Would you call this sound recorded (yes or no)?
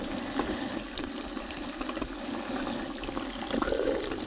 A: yes